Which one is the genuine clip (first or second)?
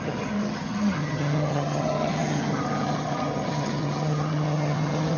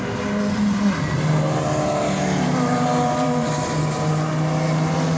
second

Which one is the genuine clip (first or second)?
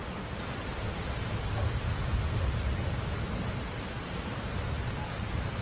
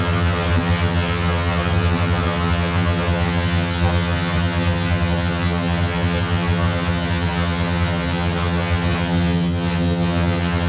first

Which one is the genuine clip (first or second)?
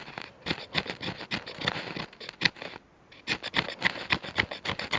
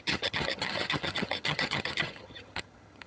first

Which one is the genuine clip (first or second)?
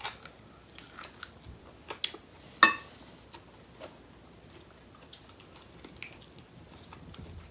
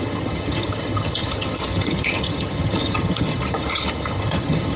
first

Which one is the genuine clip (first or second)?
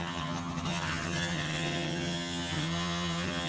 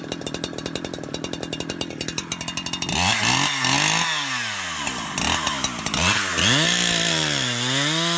second